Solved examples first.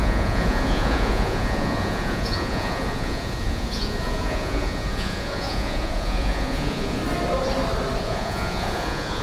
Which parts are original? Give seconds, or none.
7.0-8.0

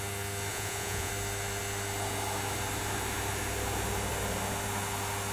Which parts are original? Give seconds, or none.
0.0-0.5; 1.1-5.3

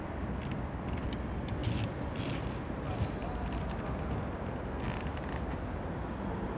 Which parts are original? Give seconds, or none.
0.0-6.6